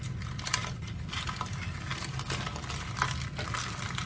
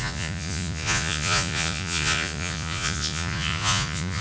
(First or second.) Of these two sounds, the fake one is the second